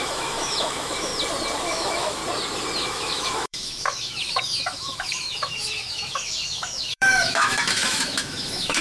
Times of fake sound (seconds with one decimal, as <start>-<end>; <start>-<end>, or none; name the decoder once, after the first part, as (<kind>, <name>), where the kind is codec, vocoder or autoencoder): 0.0-1.1 (autoencoder, DAC-VAE); 1.6-2.2; 2.8-8.8